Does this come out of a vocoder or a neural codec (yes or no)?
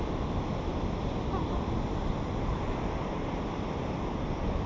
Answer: no